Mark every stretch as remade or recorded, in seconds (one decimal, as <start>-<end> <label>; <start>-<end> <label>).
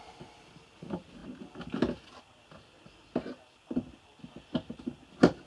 0.0-5.5 recorded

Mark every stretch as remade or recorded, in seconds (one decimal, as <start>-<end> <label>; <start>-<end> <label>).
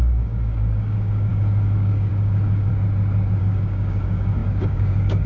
0.0-2.7 remade; 2.7-3.4 recorded; 3.4-5.3 remade